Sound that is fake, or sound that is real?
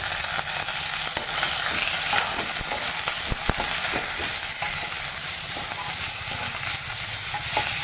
real